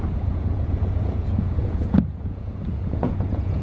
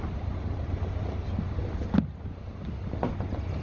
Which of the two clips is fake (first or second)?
first